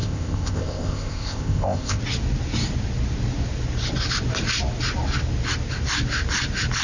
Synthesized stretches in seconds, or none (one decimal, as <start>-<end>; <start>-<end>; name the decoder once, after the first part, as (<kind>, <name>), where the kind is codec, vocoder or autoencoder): 0.0-2.0 (codec, ZipCodec)